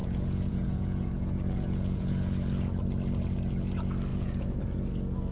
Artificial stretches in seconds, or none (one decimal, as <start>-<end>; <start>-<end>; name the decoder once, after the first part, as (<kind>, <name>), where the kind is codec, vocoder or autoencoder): 0.0-2.3 (vocoder, Vocos); 4.1-4.6